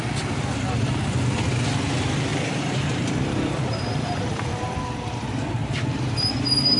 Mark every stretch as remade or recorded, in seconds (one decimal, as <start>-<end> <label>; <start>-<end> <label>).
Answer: 0.0-2.3 recorded; 2.3-4.8 remade; 4.8-5.6 recorded; 5.6-6.3 remade; 6.3-6.8 recorded